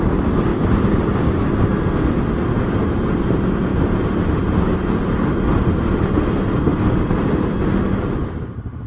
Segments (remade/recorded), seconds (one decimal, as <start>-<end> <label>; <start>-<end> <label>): 0.0-0.5 recorded; 0.5-2.3 remade; 2.3-3.7 recorded; 3.7-4.3 remade; 4.3-6.7 recorded; 6.7-7.9 remade; 7.9-8.9 recorded